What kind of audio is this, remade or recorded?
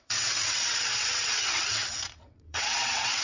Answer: remade